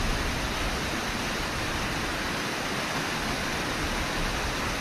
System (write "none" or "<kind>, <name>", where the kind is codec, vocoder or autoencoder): none